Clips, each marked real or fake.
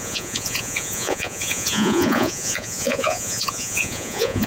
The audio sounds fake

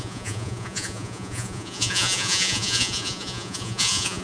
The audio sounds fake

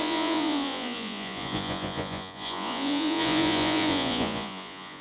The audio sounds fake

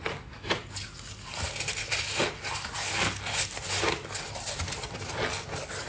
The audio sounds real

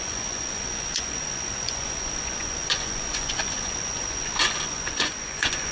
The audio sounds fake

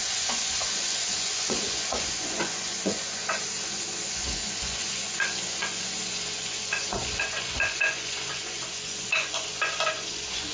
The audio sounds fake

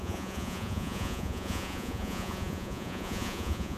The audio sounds fake